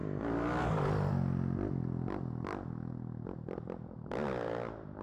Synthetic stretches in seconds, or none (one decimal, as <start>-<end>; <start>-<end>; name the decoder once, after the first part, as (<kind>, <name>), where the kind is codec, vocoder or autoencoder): none